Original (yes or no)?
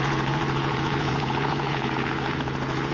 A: no